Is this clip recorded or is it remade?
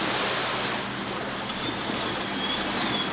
recorded